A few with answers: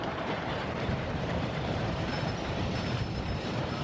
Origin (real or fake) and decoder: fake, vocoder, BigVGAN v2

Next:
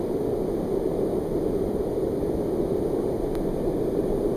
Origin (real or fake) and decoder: real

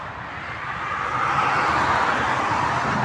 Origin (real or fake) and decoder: real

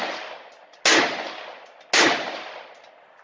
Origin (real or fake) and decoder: real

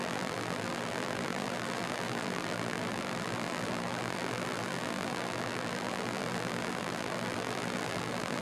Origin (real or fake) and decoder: fake, vocoder, BigVGAN v2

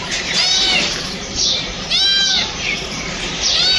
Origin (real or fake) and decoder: fake, vocoder, BigVGAN v2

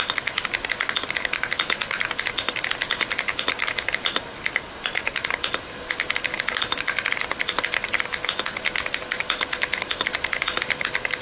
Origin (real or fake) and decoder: real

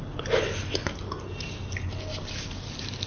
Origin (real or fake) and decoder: real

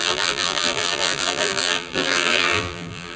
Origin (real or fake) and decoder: fake, vocoder, BigVGAN v2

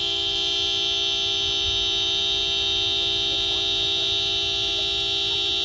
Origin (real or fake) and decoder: real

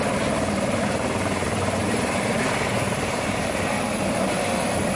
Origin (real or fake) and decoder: fake, vocoder, BigVGAN v2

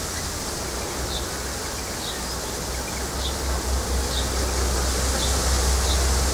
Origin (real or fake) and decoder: real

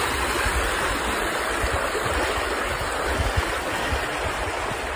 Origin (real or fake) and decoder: real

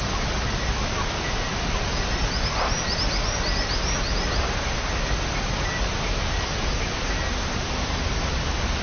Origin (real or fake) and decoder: real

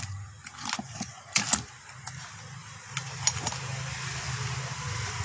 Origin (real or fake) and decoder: real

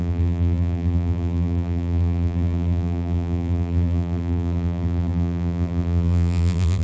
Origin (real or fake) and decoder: fake, vocoder, BigVGAN v2